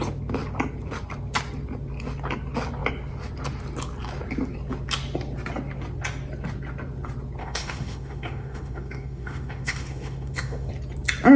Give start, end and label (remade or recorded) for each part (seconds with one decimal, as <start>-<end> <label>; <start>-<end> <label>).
0.0-7.4 recorded; 7.4-10.7 remade; 10.7-11.4 recorded